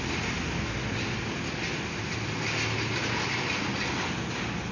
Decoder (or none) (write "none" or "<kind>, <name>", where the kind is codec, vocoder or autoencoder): none